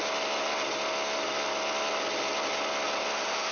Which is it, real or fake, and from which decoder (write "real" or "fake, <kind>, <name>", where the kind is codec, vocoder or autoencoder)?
real